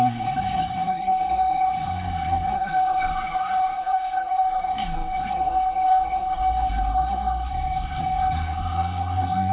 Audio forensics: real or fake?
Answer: fake